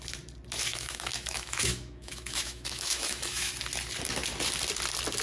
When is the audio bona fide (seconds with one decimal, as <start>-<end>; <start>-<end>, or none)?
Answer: 0.0-0.7; 3.5-5.2